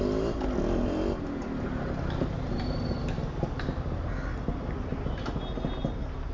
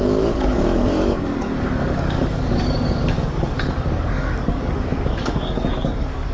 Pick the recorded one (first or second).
first